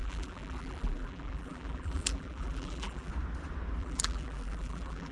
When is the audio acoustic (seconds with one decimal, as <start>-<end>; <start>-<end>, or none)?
3.1-3.8